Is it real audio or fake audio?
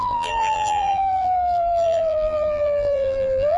fake